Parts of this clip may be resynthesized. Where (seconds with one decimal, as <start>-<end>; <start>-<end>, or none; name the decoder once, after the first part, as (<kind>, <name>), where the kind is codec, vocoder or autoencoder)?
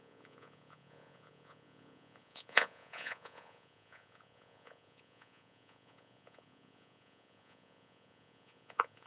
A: 0.0-9.1 (vocoder, Vocos)